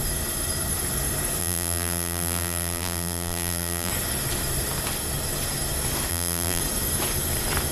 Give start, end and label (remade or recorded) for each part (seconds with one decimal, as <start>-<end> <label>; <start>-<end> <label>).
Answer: 0.0-1.4 recorded; 1.4-3.9 remade; 3.9-6.1 recorded; 6.1-6.6 remade; 6.6-7.7 recorded